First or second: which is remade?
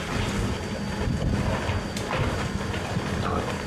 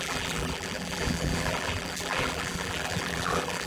second